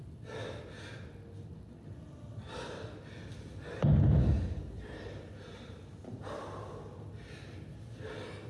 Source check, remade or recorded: recorded